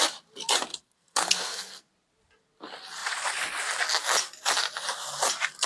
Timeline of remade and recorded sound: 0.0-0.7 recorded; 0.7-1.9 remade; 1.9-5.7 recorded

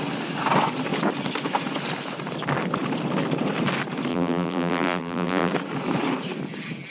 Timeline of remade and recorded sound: 0.0-4.1 recorded; 4.1-5.5 remade; 5.5-6.9 recorded